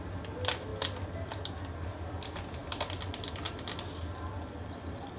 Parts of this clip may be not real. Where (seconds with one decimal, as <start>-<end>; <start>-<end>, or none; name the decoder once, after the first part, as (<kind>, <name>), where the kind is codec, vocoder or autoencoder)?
none

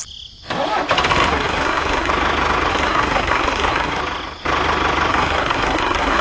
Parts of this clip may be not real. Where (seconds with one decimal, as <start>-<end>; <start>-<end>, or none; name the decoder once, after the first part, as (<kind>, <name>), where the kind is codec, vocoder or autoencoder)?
1.1-2.1 (codec, SNAC); 2.7-4.0; 5.1-6.2

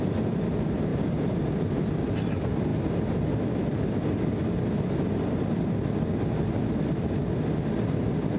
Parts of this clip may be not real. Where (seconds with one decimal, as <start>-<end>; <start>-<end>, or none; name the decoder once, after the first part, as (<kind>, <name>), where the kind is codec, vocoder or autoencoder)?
none

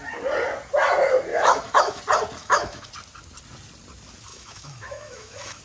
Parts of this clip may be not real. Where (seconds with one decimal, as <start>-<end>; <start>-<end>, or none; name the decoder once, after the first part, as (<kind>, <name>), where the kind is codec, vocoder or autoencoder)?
1.3-2.0 (autoencoder, DAC-VAE); 2.4-2.9; 4.3-5.6

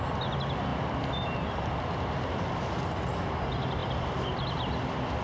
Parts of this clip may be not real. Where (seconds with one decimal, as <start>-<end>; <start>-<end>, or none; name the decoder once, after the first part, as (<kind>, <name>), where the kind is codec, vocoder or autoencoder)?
0.7-1.6 (vocoder, BigVGAN v2); 3.8-5.2

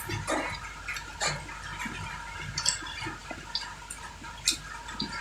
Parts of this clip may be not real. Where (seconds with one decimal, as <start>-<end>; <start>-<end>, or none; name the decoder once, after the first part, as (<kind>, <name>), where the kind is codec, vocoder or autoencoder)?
none

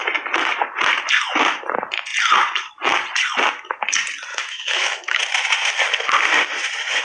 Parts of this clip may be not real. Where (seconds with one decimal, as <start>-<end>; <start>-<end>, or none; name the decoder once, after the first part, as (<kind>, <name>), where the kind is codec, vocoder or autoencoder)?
4.3-5.2 (autoencoder, DAC-VAE)

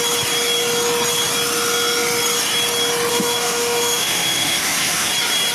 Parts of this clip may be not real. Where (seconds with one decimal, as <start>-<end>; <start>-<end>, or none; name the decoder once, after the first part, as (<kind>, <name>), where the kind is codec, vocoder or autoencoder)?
3.1-5.1 (autoencoder, DAC-VAE)